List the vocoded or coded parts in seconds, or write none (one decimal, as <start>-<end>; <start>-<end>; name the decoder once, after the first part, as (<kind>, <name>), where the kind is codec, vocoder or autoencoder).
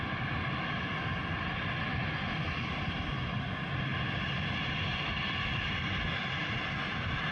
none